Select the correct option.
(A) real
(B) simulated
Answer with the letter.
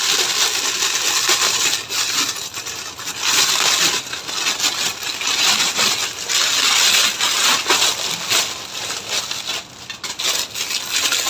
A